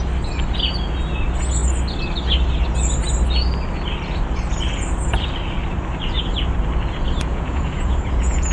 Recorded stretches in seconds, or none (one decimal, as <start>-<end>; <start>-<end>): 0.0-7.3